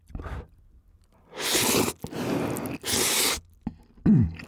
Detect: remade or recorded recorded